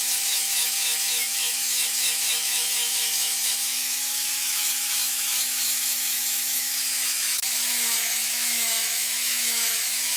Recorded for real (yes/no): no